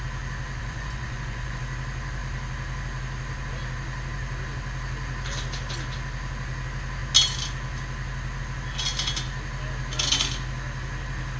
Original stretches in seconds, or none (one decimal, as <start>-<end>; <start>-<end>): 0.0-0.6; 1.6-11.4